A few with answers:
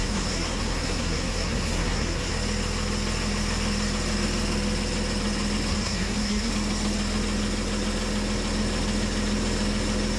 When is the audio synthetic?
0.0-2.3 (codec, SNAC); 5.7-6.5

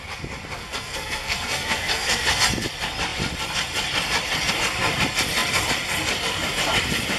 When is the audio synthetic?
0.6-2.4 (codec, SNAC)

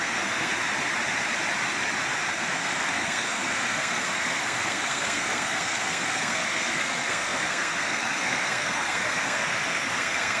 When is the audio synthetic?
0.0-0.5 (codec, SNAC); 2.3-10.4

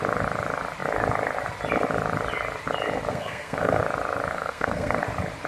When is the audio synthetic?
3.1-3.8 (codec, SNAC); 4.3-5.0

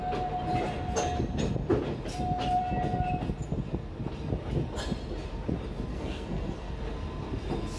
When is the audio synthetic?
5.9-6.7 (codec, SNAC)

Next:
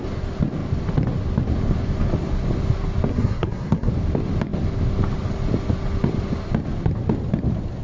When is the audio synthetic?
3.1-3.9 (codec, SNAC)

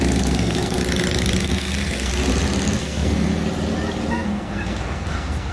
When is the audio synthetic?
0.0-0.8 (codec, SNAC); 1.4-2.1; 2.8-3.3; 4.1-5.5

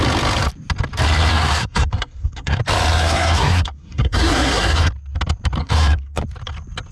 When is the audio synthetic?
1.3-2.6 (codec, SNAC); 3.0-4.9; 5.6-6.2